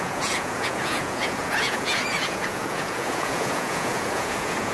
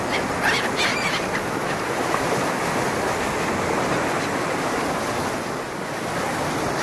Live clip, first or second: second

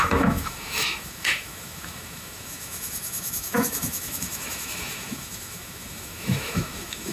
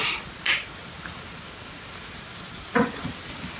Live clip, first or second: second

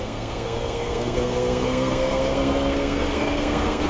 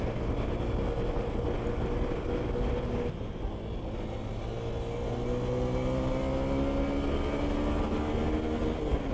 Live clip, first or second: second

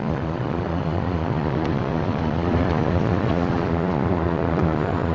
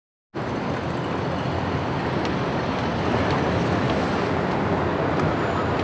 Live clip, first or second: second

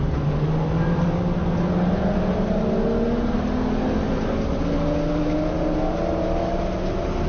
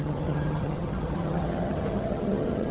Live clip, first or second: first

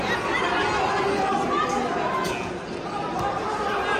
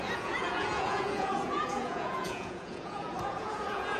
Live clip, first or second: first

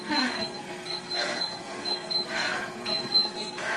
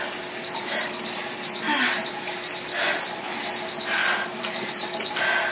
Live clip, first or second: second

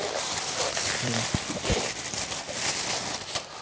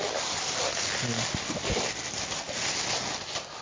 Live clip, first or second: second